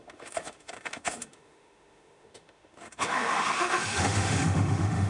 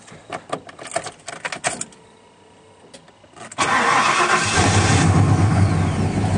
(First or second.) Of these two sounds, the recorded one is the second